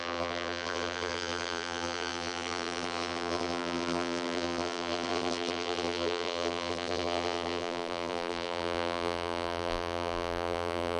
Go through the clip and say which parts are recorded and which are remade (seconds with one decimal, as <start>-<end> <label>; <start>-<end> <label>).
0.0-11.0 remade